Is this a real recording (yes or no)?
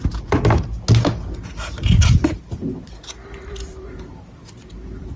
yes